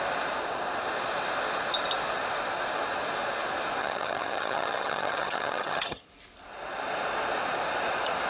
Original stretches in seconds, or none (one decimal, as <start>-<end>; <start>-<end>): 0.0-3.8; 6.1-8.3